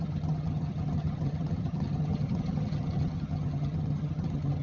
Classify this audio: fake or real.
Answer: fake